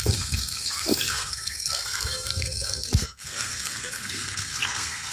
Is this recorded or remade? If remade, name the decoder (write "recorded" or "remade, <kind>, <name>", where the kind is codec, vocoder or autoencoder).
remade, codec, SNAC